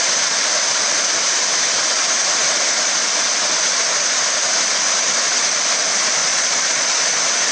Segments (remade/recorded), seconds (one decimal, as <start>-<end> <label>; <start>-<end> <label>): 0.0-6.2 recorded; 6.2-7.0 remade; 7.0-7.5 recorded